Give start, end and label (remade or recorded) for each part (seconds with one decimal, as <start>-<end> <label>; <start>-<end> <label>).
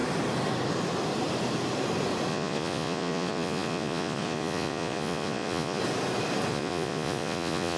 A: 0.0-2.3 recorded; 2.3-5.8 remade; 5.8-6.5 recorded; 6.5-7.8 remade